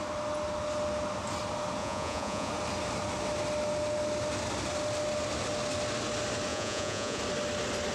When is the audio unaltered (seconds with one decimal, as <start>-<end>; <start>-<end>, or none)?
0.0-1.8; 2.5-6.5; 7.2-7.9